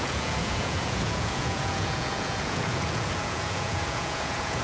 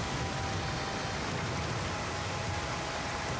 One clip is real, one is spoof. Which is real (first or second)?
second